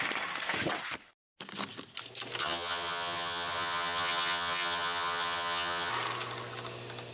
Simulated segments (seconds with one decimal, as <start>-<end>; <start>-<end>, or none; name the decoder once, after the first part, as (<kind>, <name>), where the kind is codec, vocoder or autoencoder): 2.4-5.9 (vocoder, HiFi-GAN)